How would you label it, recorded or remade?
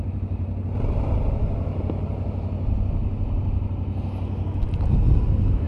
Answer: recorded